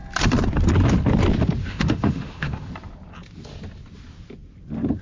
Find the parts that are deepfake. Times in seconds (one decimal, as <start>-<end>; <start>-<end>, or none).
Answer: 1.6-2.7